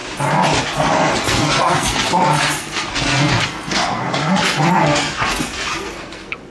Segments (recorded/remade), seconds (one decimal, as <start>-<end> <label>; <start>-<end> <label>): 0.0-0.6 recorded; 0.6-6.5 remade